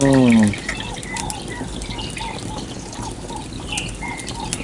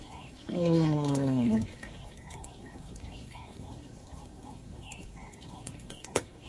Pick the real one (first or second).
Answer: first